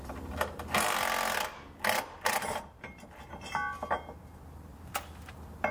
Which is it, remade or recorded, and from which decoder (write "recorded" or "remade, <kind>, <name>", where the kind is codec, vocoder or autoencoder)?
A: recorded